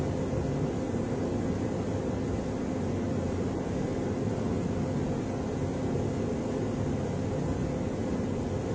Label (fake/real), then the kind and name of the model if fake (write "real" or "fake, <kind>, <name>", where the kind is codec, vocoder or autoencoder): real